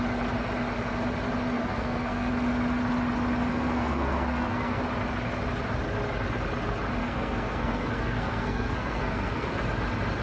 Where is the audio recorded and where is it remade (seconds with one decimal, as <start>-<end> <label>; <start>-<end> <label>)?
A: 0.0-1.6 recorded; 1.6-2.3 remade; 2.3-3.5 recorded; 3.5-4.8 remade; 4.8-7.0 recorded; 7.0-9.6 remade; 9.6-10.2 recorded